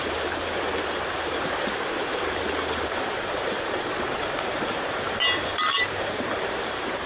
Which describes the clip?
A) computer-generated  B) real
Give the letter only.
A